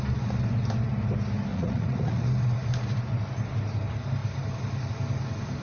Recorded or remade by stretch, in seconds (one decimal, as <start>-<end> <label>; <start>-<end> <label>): 0.0-1.5 recorded; 1.5-2.3 remade; 2.3-5.6 recorded